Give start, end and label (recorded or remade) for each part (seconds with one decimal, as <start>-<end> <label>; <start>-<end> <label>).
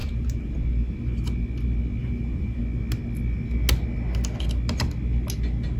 0.0-0.5 remade; 0.5-2.0 recorded; 2.0-2.6 remade; 2.6-5.8 recorded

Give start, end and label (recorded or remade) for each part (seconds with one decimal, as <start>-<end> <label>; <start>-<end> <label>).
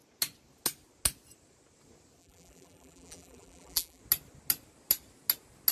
0.0-2.2 recorded; 2.2-4.0 remade; 4.0-5.7 recorded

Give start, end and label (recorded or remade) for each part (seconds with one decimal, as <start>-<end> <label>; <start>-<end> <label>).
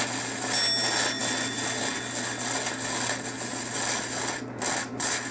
0.0-5.3 recorded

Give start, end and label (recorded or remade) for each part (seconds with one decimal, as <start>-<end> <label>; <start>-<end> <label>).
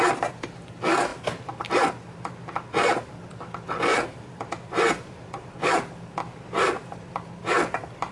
0.0-1.1 recorded; 1.1-1.9 remade; 1.9-3.9 recorded; 3.9-8.1 remade